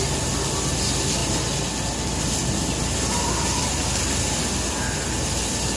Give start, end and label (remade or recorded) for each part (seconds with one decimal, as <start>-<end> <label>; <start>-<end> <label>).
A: 0.0-5.8 recorded